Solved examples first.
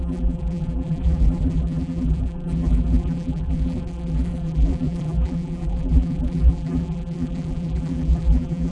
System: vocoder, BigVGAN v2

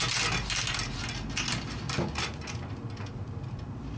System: none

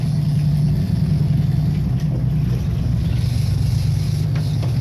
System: none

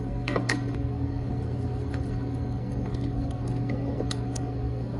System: codec, SNAC